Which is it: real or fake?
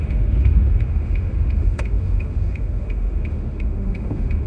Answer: fake